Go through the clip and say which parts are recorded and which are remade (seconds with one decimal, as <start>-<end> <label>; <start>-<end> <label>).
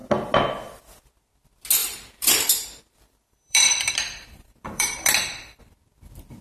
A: 0.0-1.8 recorded; 1.8-5.6 remade; 5.6-6.4 recorded